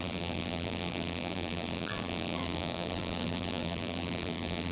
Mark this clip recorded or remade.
remade